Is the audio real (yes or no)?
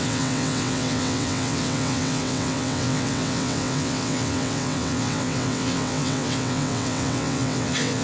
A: no